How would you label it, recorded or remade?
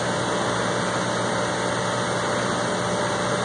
recorded